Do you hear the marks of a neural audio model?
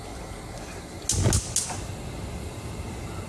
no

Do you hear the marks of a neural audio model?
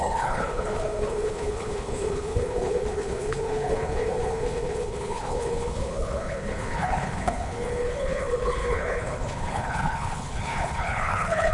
yes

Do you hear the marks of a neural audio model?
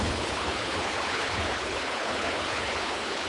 yes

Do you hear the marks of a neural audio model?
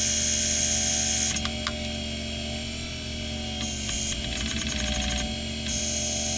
no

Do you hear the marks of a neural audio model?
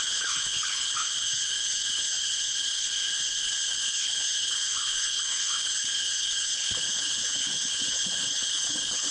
yes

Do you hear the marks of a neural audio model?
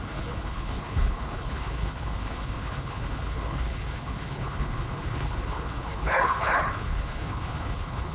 yes